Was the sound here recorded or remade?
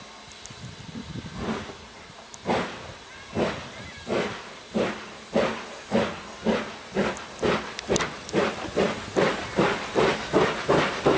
recorded